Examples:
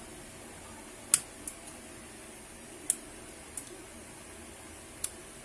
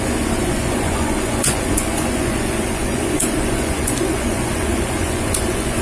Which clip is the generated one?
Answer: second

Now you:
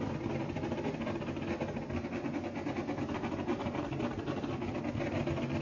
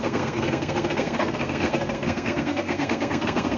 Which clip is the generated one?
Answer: second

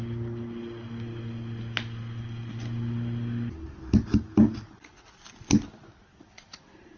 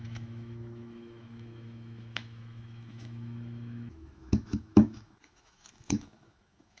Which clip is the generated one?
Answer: second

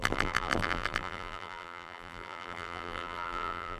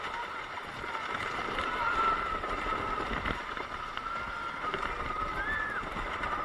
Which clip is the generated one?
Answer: first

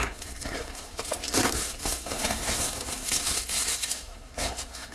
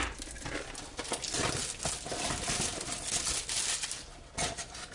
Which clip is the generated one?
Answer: first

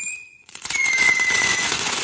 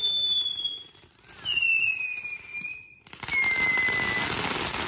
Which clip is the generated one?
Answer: first